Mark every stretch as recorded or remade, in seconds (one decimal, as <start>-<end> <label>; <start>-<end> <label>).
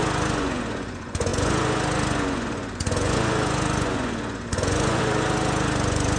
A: 0.0-6.2 remade